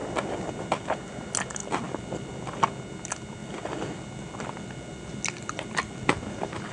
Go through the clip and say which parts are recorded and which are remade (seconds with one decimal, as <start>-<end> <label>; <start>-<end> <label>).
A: 0.0-1.6 recorded; 1.6-2.3 remade; 2.3-3.4 recorded; 3.4-6.1 remade; 6.1-6.7 recorded